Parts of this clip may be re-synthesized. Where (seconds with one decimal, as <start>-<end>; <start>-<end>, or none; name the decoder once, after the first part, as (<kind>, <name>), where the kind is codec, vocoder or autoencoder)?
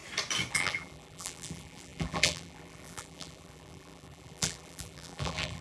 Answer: 0.5-5.6 (vocoder, BigVGAN v2)